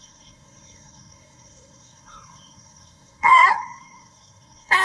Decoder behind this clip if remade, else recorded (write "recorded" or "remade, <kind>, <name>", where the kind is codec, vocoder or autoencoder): remade, codec, SNAC